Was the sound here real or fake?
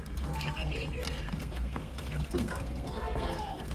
fake